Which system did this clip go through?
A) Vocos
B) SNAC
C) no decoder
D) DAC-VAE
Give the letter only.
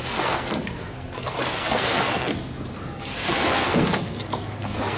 B